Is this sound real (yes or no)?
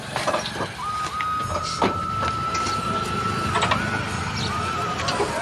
yes